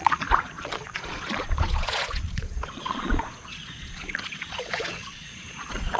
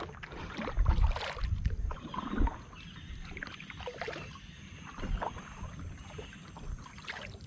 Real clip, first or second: second